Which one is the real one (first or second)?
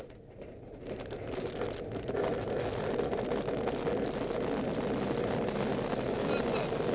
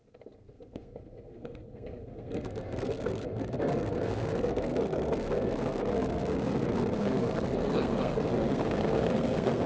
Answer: first